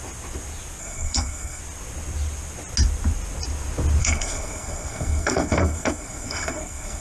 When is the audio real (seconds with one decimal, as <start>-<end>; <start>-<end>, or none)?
0.0-0.8; 1.6-4.0

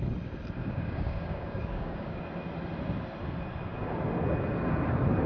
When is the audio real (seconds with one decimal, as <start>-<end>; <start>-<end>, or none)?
0.0-0.6; 2.2-5.3

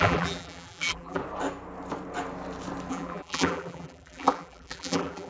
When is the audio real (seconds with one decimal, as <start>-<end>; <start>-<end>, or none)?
1.2-2.9